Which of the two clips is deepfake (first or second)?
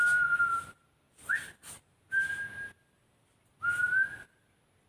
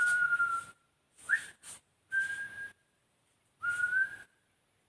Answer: second